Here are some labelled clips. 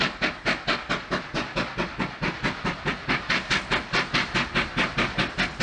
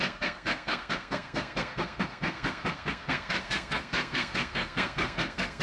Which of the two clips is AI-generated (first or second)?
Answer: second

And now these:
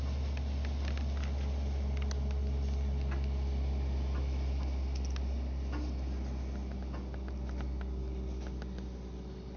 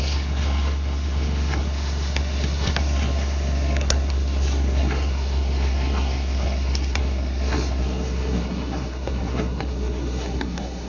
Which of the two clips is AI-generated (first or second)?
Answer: second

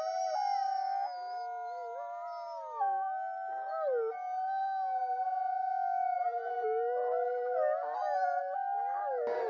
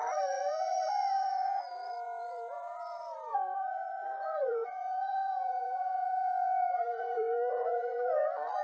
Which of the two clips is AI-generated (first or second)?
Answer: second